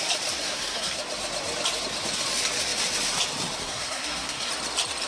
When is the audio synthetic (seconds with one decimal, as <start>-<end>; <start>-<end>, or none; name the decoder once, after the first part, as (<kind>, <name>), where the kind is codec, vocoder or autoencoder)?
0.4-1.0 (codec, SNAC); 3.6-4.5